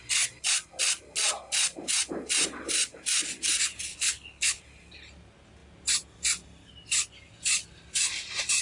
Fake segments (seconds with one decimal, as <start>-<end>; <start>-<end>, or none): 3.9-4.6